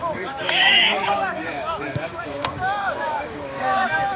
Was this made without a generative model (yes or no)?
no